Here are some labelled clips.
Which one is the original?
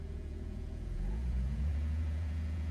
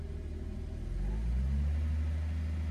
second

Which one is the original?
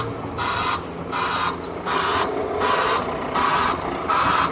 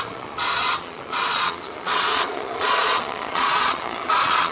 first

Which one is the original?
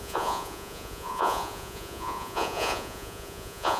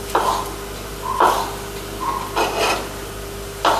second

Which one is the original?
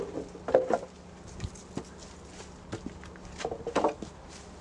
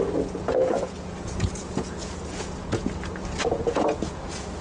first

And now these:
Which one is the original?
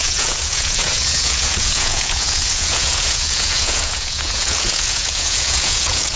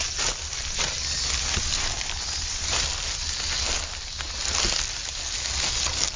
second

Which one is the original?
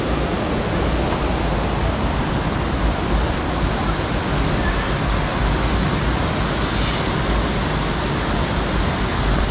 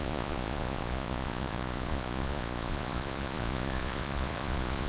first